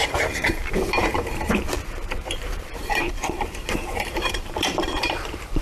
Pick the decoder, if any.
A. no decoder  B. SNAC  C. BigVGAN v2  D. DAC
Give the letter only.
C